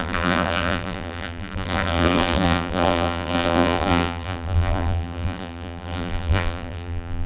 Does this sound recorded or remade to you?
remade